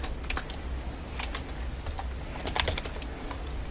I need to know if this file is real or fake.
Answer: real